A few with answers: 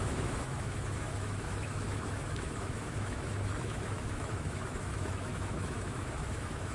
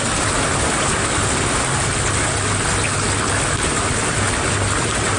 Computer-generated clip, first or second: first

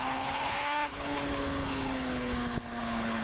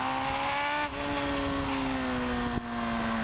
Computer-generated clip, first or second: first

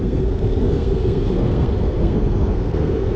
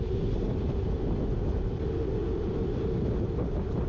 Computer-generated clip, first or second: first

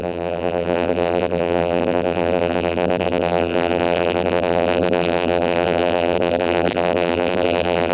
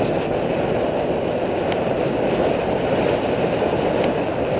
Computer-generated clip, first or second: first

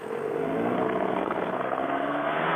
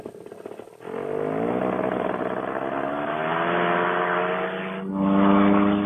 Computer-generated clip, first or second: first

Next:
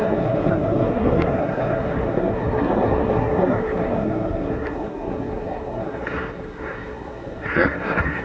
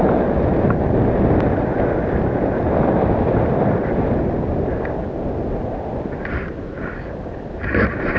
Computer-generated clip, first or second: first